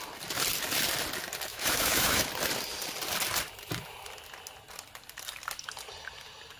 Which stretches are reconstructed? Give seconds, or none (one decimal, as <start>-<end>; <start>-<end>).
1.5-2.3